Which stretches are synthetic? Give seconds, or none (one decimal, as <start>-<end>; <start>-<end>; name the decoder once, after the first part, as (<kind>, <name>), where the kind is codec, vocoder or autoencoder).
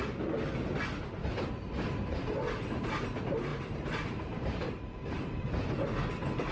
3.5-5.7 (vocoder, BigVGAN v2)